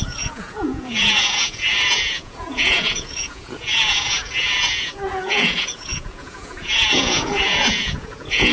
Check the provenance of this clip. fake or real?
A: fake